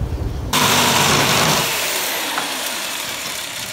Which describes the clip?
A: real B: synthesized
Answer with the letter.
B